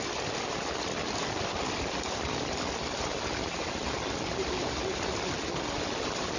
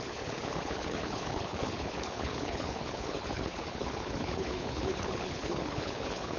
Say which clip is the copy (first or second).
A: second